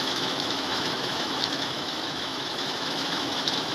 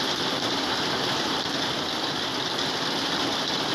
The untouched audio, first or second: second